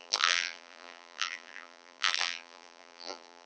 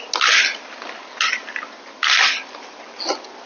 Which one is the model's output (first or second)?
first